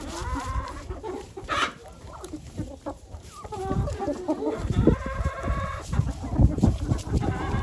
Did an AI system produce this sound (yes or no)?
yes